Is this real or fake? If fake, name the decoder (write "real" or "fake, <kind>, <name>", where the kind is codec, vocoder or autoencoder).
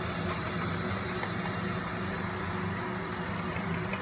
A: real